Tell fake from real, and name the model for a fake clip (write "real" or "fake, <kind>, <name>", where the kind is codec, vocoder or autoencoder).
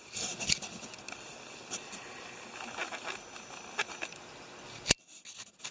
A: real